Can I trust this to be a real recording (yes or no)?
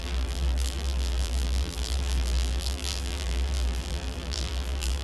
no